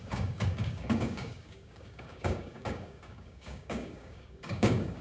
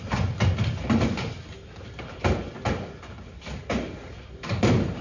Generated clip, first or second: first